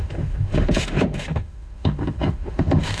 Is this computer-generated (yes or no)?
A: yes